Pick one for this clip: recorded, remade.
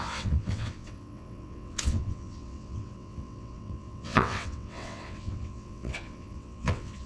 remade